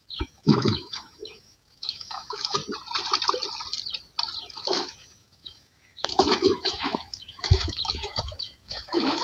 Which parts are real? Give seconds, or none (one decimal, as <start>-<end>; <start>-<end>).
2.6-4.5

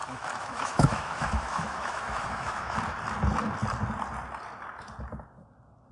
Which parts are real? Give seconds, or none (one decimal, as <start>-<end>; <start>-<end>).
2.8-5.9

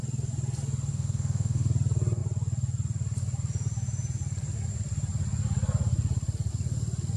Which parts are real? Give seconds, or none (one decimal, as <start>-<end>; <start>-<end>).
0.0-0.9; 1.7-7.2

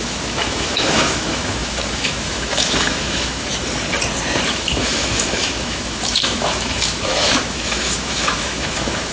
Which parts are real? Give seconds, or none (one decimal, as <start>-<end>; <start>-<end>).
3.5-4.5

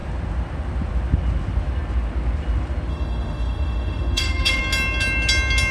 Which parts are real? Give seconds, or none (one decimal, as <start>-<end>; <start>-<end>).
0.0-2.9; 4.6-5.7

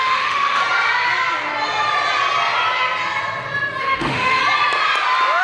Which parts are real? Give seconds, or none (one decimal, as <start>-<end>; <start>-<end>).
0.6-3.8; 4.4-5.4

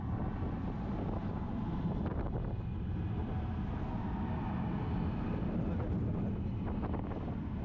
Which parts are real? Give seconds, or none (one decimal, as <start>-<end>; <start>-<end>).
0.0-7.6

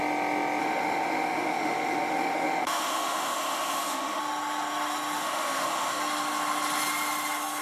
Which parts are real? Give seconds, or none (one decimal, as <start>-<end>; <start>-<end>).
0.0-0.6; 4.2-5.2; 6.0-7.6